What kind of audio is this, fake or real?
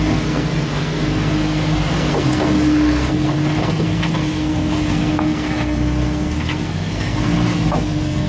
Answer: fake